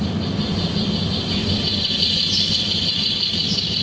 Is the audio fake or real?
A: real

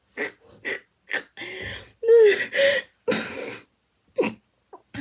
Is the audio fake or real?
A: real